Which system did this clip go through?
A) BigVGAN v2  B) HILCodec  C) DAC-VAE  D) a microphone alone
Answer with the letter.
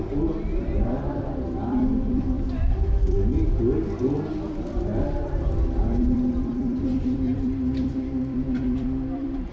A